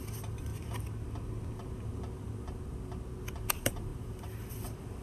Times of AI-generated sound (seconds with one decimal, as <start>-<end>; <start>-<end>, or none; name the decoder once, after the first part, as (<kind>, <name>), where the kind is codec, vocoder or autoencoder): 0.0-0.5 (vocoder, BigVGAN v2); 3.5-5.0